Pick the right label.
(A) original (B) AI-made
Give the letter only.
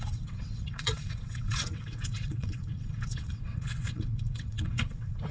B